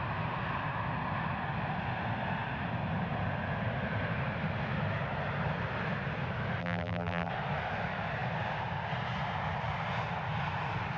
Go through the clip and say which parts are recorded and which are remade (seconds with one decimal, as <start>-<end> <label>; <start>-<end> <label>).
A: 0.0-6.6 recorded; 6.6-7.3 remade; 7.3-11.0 recorded